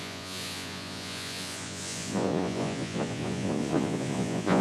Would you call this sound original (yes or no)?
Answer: no